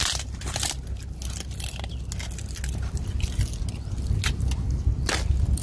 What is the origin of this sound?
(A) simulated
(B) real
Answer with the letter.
B